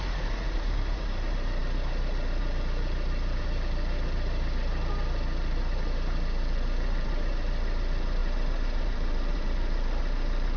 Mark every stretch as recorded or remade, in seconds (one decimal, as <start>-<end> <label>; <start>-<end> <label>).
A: 0.0-8.2 remade; 8.2-8.8 recorded; 8.8-10.6 remade